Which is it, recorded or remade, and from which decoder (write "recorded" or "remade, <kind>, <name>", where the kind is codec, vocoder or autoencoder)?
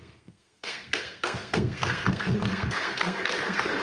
remade, codec, SNAC